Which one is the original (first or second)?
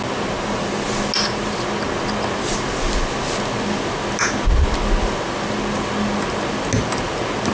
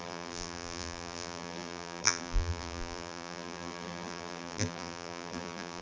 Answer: first